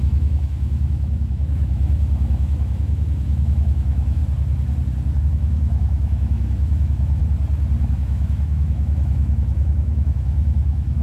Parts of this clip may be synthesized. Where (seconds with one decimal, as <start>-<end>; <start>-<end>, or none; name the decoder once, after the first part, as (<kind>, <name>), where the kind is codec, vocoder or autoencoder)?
0.0-4.2 (autoencoder, DAC-VAE); 5.2-7.2; 7.8-11.0